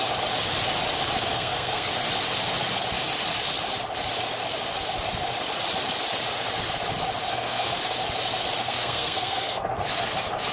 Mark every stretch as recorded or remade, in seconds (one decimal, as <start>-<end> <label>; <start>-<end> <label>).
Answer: 0.0-1.3 recorded; 1.3-1.9 remade; 1.9-7.3 recorded; 7.3-7.8 remade; 7.8-8.6 recorded; 8.6-9.7 remade; 9.7-10.5 recorded